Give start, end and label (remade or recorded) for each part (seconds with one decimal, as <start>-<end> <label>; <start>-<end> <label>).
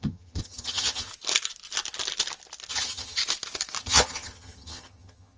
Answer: 0.0-1.1 remade; 1.1-2.7 recorded; 2.7-3.2 remade; 3.2-3.8 recorded; 3.8-5.4 remade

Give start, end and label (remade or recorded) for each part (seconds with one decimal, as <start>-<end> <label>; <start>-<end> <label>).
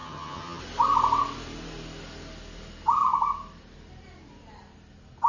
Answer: 0.0-0.6 remade; 0.6-5.3 recorded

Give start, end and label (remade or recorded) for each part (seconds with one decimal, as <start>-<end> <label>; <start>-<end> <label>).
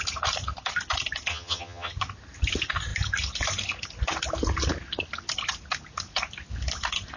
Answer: 0.0-1.3 recorded; 1.3-1.9 remade; 1.9-7.2 recorded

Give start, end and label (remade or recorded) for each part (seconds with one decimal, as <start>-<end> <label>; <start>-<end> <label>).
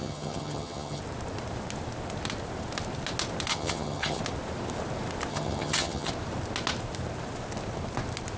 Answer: 0.0-1.0 remade; 1.0-3.5 recorded; 3.5-4.2 remade; 4.2-5.3 recorded; 5.3-6.1 remade; 6.1-8.4 recorded